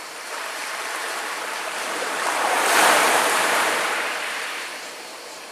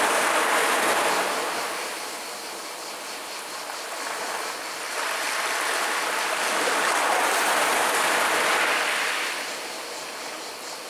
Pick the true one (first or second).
second